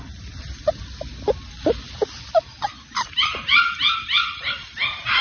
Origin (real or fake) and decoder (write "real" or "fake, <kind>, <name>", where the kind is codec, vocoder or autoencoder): real